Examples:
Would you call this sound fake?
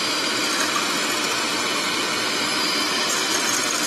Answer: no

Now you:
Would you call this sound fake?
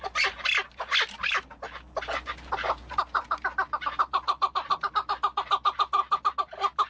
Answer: no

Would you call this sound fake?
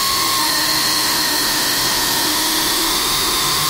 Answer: yes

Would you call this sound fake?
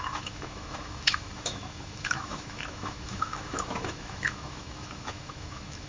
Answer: yes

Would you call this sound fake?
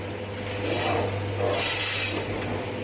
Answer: no